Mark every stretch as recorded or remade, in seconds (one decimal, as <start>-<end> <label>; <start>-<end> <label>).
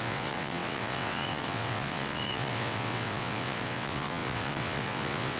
0.0-5.4 remade